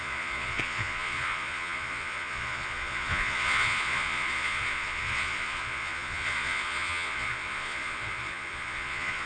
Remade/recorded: remade